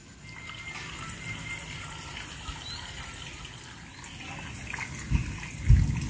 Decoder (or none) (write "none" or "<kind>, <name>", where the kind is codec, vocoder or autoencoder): none